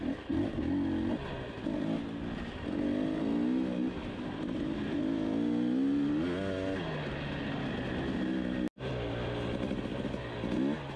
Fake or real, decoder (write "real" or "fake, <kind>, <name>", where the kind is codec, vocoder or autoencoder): real